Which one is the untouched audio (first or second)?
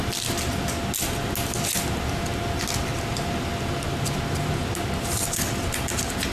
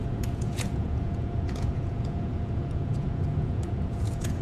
first